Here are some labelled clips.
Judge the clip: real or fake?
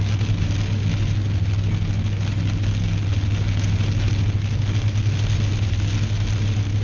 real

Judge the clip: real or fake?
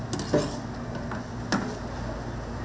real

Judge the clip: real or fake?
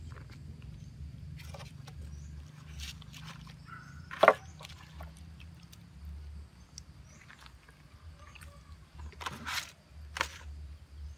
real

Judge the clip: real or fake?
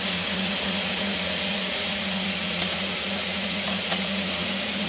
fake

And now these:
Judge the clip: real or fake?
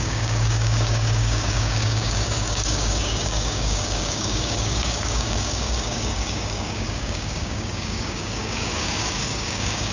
fake